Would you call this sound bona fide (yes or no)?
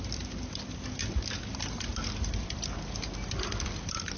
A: yes